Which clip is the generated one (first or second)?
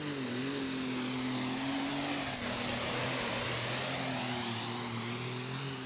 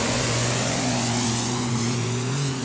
second